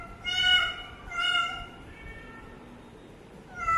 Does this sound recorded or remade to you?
recorded